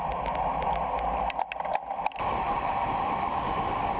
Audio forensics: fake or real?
real